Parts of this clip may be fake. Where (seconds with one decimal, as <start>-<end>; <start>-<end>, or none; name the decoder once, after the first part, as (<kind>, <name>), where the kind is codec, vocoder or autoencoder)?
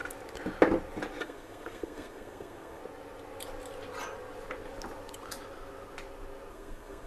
1.2-2.8 (codec, SNAC); 6.5-7.1